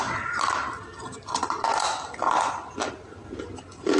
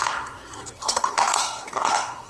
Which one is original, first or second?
first